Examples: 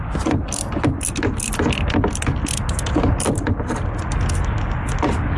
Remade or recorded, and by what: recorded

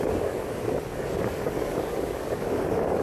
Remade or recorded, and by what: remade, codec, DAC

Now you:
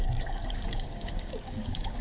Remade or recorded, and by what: remade, codec, DAC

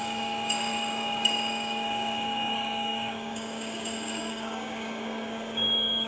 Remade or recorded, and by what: remade, codec, DAC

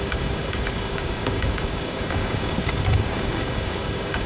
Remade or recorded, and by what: remade, codec, DAC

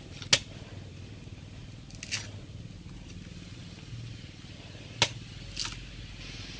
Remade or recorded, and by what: recorded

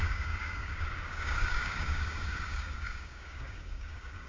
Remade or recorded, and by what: remade, codec, DAC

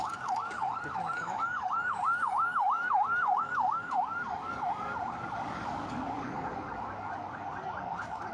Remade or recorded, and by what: remade, codec, DAC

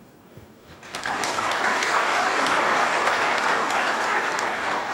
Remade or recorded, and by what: remade, codec, DAC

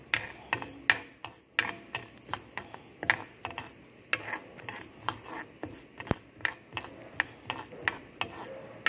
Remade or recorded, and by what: recorded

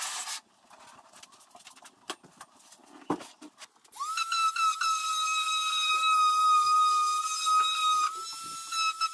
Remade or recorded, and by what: recorded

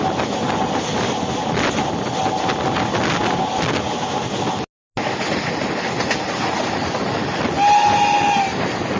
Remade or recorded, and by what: recorded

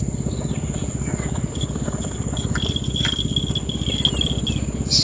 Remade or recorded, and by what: recorded